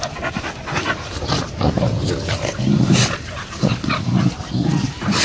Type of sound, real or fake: fake